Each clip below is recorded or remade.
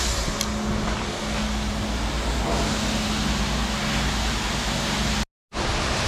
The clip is recorded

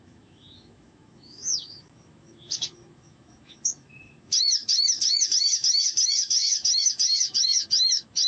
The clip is remade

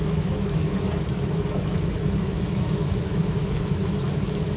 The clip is remade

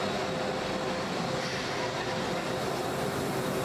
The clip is recorded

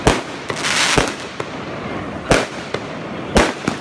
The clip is recorded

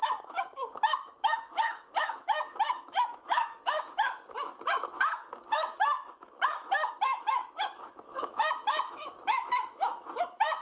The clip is remade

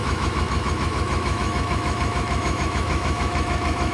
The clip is remade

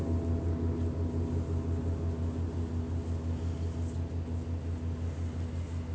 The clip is recorded